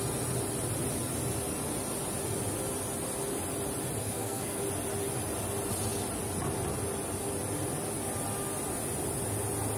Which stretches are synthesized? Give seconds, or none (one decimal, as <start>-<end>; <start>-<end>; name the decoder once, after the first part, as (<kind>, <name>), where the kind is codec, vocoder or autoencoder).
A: 4.0-4.6 (codec, SNAC)